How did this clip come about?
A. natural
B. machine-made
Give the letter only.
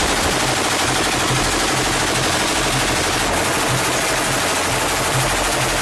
A